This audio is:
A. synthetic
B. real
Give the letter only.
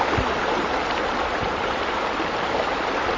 B